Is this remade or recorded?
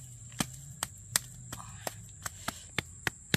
recorded